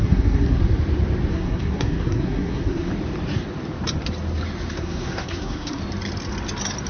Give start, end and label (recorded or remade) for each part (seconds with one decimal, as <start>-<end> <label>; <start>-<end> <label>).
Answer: 0.0-0.6 remade; 0.6-1.3 recorded; 1.3-2.9 remade; 2.9-4.7 recorded; 4.7-5.8 remade; 5.8-6.9 recorded